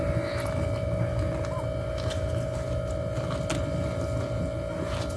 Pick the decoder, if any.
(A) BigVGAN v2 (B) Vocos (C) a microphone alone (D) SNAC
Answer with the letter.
C